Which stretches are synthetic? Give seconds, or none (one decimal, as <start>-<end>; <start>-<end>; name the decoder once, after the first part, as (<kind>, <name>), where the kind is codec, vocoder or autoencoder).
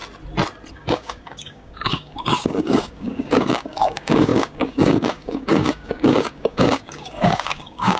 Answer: 0.7-8.0 (codec, DAC)